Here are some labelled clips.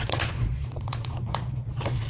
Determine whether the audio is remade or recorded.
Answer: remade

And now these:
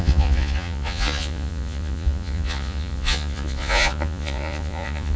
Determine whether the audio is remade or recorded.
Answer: remade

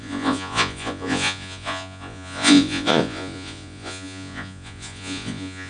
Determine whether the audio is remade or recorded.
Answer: remade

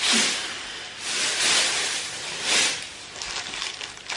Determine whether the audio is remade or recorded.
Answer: recorded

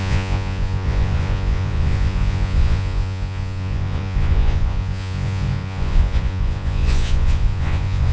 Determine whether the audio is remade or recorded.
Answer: remade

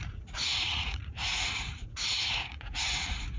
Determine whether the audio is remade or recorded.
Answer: remade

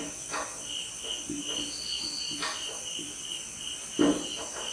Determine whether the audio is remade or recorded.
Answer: recorded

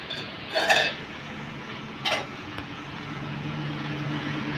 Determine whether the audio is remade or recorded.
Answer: remade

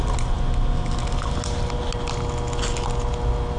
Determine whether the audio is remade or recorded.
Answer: recorded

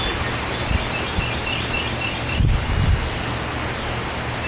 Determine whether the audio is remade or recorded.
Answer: recorded